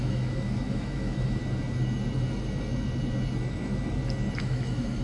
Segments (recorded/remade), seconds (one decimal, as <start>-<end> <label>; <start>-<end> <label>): 0.0-1.4 remade; 1.4-4.4 recorded; 4.4-5.0 remade